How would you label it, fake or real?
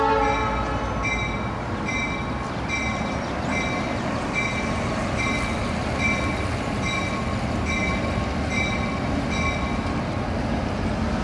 real